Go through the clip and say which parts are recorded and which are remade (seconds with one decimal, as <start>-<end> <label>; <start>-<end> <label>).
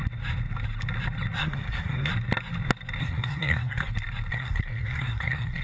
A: 0.0-1.4 recorded; 1.4-2.1 remade; 2.1-3.0 recorded; 3.0-3.9 remade; 3.9-4.3 recorded; 4.3-5.6 remade